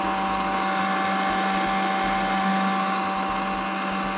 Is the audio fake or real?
real